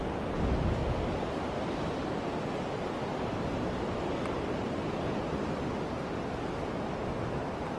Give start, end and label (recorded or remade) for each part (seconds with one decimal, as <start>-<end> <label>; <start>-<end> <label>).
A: 0.0-7.8 recorded

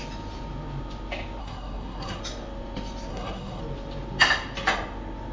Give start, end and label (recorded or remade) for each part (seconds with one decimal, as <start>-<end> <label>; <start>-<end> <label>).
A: 0.0-1.4 recorded; 1.4-2.2 remade; 2.2-3.1 recorded; 3.1-3.6 remade; 3.6-5.3 recorded